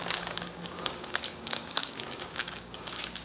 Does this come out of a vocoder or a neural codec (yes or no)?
yes